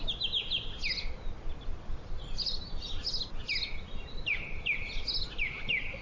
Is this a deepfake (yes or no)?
no